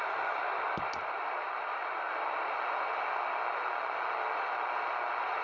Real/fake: real